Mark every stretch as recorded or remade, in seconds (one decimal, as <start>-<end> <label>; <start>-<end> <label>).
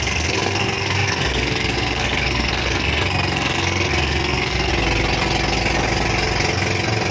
0.0-4.7 remade; 4.7-7.1 recorded